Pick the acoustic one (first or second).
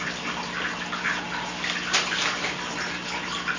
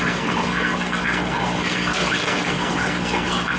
first